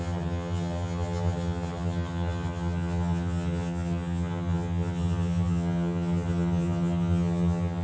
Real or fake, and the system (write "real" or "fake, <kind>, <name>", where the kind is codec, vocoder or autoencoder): fake, vocoder, HiFi-GAN